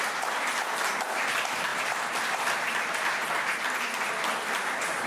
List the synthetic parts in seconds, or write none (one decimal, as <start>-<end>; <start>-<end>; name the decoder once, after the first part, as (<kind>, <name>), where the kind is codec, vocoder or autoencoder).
0.0-3.2 (vocoder, BigVGAN v2); 4.4-5.1